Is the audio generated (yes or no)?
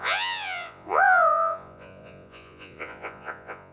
yes